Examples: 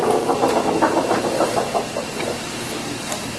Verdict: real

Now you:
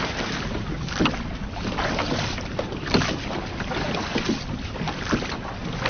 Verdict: real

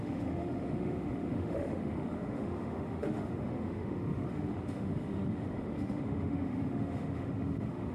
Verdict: fake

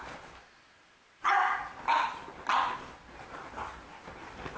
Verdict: real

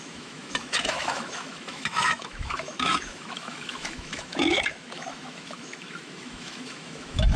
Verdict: fake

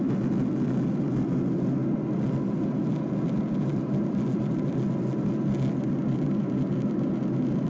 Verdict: real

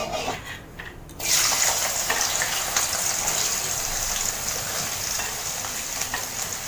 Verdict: real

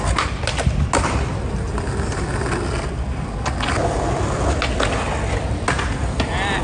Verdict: real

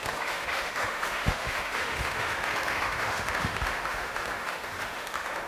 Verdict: fake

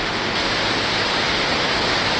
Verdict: real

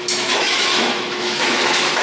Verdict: fake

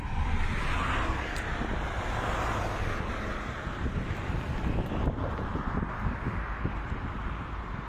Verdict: real